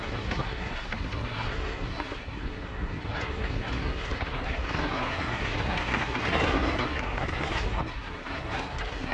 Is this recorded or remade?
remade